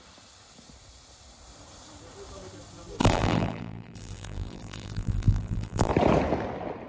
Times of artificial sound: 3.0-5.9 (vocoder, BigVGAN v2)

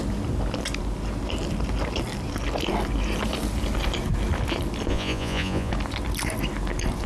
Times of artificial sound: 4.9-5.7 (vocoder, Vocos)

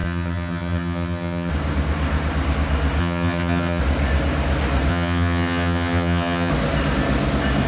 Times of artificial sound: 0.0-1.5 (vocoder, HiFi-GAN); 3.0-3.8; 4.9-6.5